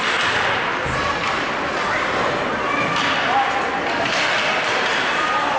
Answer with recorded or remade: recorded